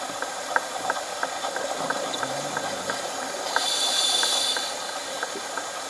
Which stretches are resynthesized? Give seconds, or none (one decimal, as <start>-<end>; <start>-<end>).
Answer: 0.0-5.9